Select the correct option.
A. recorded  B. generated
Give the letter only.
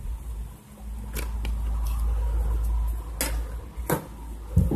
A